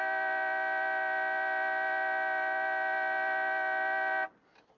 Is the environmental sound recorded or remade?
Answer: recorded